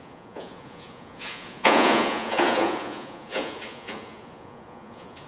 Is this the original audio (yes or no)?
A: no